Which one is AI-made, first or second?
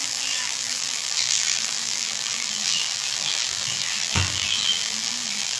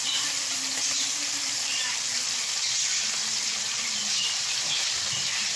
first